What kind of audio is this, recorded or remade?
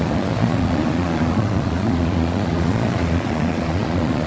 remade